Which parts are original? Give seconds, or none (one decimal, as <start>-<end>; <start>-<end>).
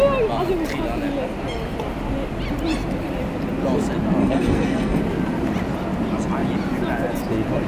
0.0-4.2; 5.0-7.7